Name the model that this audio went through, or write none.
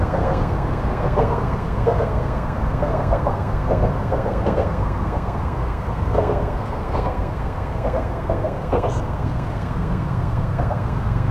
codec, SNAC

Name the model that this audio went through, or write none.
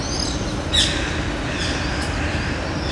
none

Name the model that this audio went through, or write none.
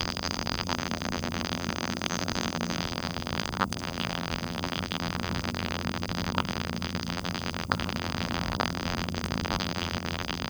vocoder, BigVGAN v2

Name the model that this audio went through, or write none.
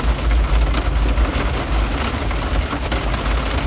none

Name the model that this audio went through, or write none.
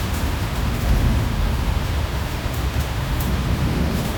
autoencoder, DAC-VAE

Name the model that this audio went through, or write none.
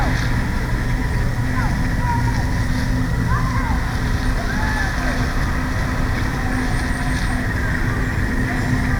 none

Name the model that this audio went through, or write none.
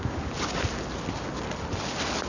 none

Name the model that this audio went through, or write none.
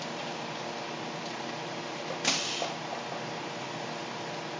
none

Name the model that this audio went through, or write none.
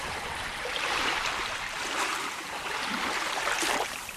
vocoder, BigVGAN v2